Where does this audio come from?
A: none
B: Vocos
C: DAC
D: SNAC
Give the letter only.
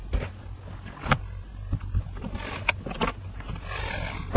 A